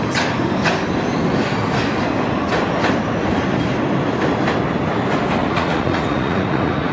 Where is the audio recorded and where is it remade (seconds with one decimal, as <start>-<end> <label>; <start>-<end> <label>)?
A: 0.0-5.4 recorded; 5.4-6.9 remade